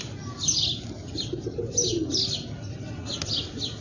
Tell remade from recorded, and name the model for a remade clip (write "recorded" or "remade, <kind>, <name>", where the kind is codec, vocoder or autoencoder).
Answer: recorded